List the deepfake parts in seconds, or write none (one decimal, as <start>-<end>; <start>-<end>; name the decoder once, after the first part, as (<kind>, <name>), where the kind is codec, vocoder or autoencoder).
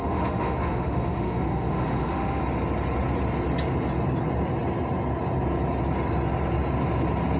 0.0-2.4 (autoencoder, DAC-VAE)